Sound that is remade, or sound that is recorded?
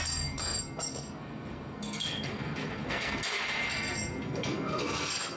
remade